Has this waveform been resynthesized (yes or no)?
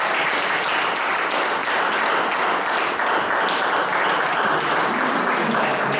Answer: no